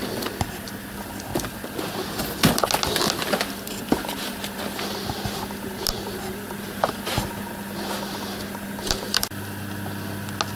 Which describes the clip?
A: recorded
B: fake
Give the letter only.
A